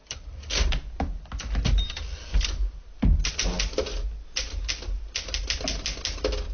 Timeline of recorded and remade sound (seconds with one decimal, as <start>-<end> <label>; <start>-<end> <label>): 0.0-1.4 remade; 1.4-6.5 recorded

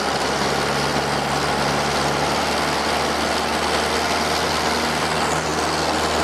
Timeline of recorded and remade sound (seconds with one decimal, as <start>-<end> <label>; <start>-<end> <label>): 0.0-0.9 remade; 0.9-4.5 recorded; 4.5-5.5 remade; 5.5-6.2 recorded

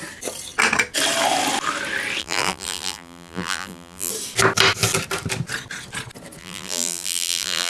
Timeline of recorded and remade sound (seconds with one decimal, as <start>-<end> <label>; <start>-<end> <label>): 0.0-2.2 recorded; 2.2-4.1 remade; 4.1-6.4 recorded; 6.4-7.7 remade

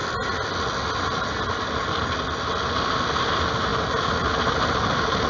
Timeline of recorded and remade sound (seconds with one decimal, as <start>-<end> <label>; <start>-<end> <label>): 0.0-5.3 recorded

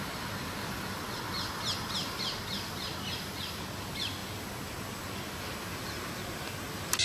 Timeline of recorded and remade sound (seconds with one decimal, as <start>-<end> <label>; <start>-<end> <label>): 0.0-7.0 recorded

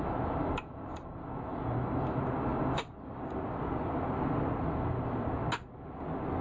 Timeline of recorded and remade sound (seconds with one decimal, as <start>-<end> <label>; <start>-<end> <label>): 0.0-1.5 remade; 1.5-2.0 recorded; 2.0-2.5 remade; 2.5-4.9 recorded; 4.9-5.4 remade; 5.4-6.4 recorded